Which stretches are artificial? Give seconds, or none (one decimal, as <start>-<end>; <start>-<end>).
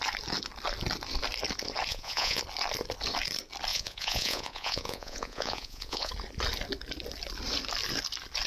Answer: 1.9-2.4; 3.7-6.1